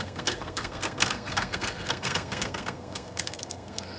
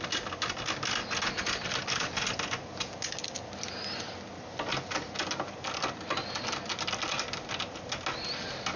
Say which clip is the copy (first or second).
first